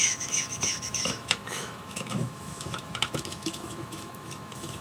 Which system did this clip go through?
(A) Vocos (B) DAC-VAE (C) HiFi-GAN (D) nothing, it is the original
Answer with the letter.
B